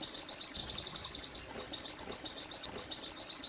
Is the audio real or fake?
real